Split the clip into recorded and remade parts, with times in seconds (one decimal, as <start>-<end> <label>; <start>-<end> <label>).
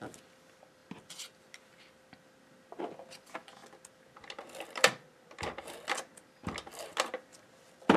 0.0-7.3 recorded; 7.3-8.0 remade